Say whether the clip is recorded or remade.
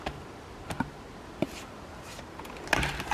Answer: recorded